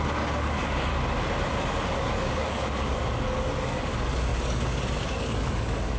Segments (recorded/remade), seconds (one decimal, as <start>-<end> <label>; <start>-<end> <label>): 0.0-0.9 remade; 0.9-1.7 recorded; 1.7-6.0 remade